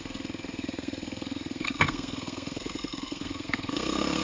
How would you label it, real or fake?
fake